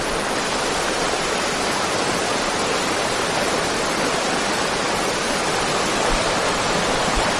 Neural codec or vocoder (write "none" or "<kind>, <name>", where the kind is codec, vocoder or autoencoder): none